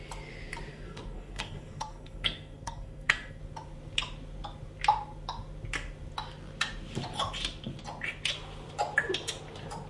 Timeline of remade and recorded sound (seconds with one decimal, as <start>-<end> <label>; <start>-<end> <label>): 0.0-0.7 recorded; 0.7-3.4 remade; 3.4-9.9 recorded